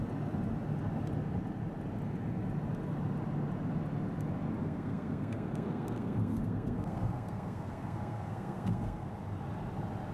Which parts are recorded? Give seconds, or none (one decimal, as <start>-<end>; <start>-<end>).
0.0-4.6; 9.1-10.1